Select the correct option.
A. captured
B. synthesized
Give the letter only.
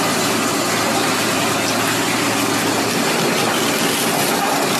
A